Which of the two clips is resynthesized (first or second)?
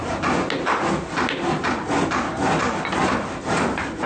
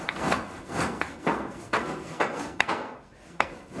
second